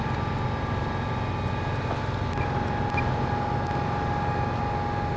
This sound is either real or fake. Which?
real